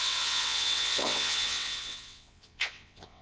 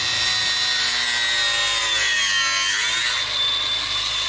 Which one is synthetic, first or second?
first